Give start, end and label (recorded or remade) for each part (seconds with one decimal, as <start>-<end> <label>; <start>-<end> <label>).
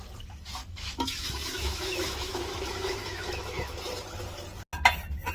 0.0-0.6 recorded; 0.6-3.8 remade; 3.8-5.3 recorded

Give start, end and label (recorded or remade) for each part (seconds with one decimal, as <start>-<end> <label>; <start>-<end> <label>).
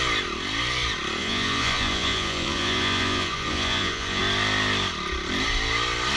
0.0-1.2 recorded; 1.2-4.2 remade; 4.2-6.2 recorded